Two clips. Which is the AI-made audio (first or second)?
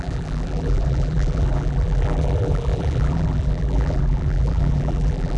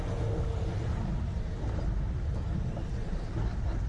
first